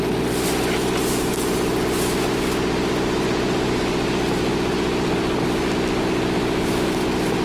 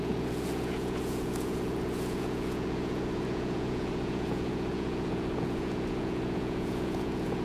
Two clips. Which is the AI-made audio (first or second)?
second